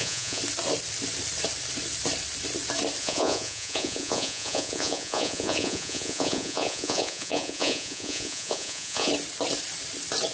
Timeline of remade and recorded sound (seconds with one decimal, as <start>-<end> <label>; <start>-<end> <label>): 0.0-0.4 remade; 0.4-3.0 recorded; 3.0-9.1 remade; 9.1-10.3 recorded